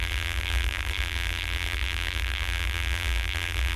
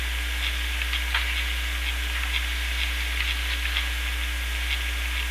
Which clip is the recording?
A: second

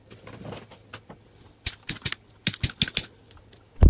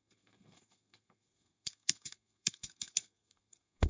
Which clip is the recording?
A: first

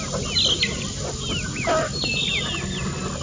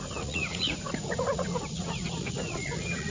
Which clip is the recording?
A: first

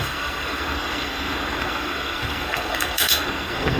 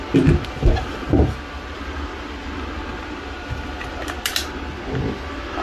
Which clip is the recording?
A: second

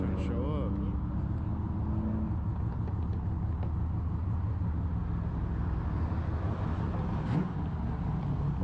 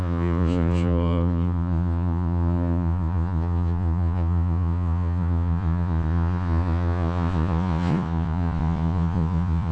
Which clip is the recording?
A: first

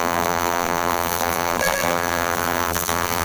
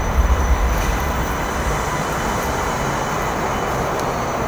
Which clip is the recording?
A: second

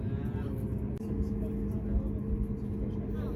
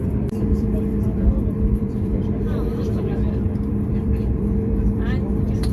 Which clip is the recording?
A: first